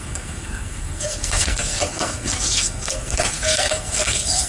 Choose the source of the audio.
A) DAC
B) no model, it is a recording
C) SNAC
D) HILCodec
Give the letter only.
C